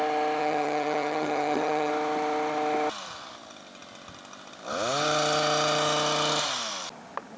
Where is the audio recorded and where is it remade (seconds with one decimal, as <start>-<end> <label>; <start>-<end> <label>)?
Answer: 0.0-0.4 recorded; 0.4-1.9 remade; 1.9-7.4 recorded